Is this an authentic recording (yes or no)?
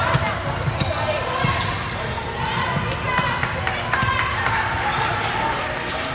yes